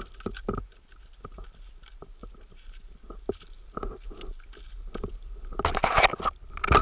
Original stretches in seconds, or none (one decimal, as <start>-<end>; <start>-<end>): 0.0-6.8